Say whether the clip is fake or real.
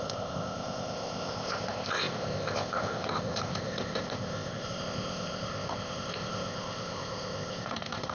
fake